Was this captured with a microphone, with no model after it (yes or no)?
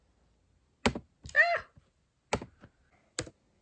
yes